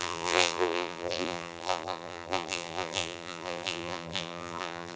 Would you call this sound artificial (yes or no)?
yes